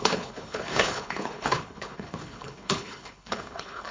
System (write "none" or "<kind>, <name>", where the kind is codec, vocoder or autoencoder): codec, HILCodec